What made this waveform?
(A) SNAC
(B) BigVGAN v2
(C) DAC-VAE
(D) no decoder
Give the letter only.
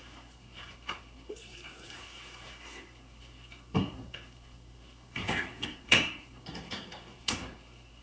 A